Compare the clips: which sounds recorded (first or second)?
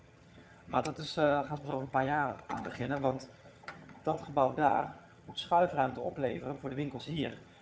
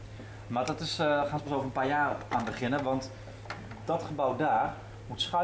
second